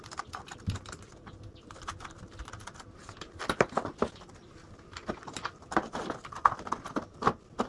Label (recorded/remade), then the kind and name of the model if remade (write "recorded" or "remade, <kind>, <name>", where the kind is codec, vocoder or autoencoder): recorded